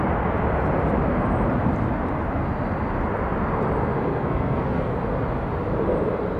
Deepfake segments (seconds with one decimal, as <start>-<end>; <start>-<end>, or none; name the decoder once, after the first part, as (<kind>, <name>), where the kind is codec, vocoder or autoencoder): 4.1-5.0 (codec, SNAC)